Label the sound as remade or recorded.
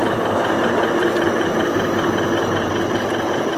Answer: remade